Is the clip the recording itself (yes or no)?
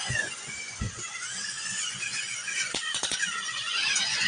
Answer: no